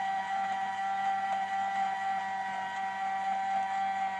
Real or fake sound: real